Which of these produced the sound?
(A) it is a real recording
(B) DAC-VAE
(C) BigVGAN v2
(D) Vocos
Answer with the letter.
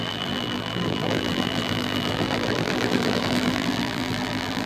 C